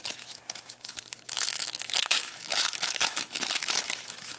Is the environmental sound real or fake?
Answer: fake